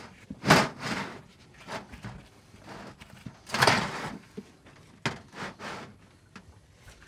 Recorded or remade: recorded